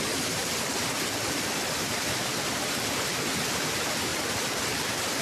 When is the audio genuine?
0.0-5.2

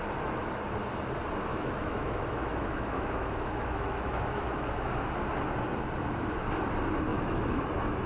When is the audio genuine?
0.0-1.5; 4.9-7.1; 7.6-8.1

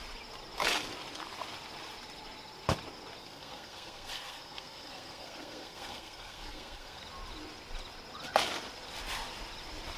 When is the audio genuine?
0.0-3.2; 7.0-10.0

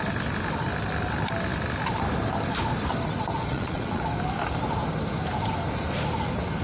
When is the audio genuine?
0.0-3.4; 4.0-6.6

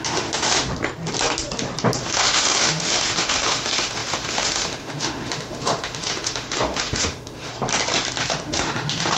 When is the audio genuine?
0.7-2.0; 7.5-8.2

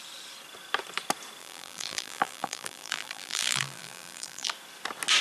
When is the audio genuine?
0.0-1.4; 4.5-5.2